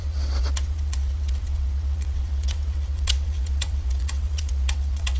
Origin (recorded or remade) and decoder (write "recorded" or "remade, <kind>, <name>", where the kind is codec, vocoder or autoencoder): remade, vocoder, WaveNeXt